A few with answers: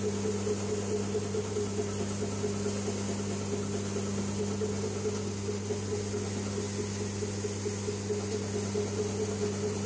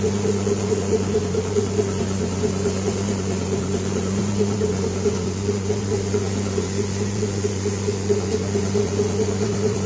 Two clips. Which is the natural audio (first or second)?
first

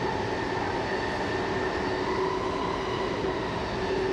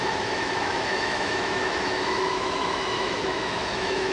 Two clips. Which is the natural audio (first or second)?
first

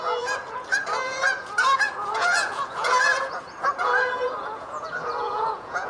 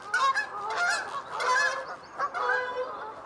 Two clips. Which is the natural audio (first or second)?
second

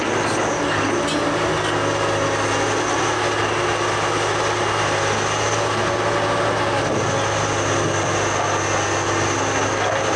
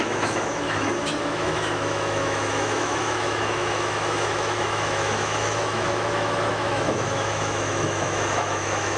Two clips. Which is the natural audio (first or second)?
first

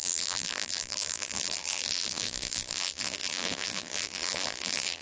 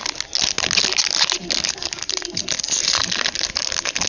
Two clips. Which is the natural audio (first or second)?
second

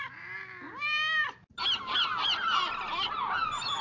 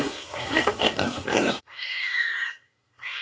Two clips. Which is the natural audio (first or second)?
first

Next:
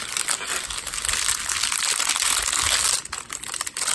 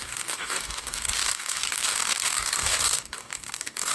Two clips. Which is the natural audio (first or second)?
first